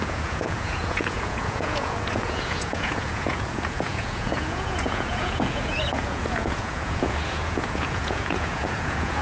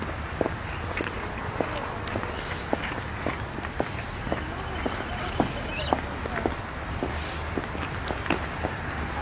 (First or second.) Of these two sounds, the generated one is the first